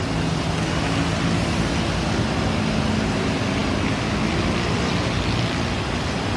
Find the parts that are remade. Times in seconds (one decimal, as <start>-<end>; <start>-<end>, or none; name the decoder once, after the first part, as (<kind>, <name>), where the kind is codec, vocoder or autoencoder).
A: none